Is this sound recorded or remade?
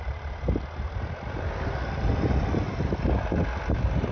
recorded